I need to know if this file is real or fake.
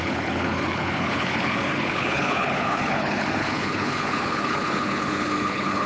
fake